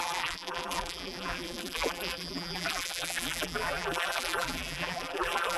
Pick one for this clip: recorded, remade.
remade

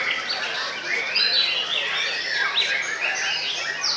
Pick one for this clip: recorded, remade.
recorded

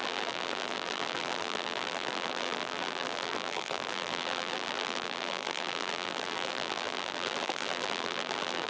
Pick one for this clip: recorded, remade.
remade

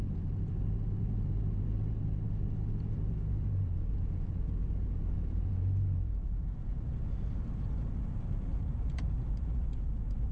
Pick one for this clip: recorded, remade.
remade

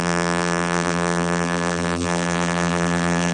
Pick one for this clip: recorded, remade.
remade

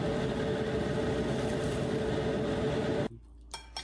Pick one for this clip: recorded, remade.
recorded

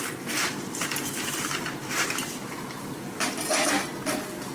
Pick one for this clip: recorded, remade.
recorded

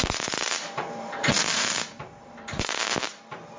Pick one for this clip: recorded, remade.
remade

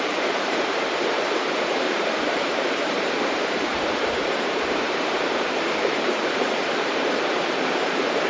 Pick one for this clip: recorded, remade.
remade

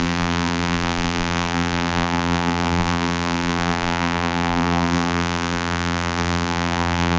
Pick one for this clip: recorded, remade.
remade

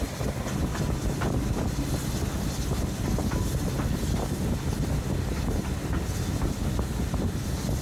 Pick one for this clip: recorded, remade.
recorded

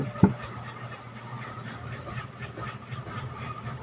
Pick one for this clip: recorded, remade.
remade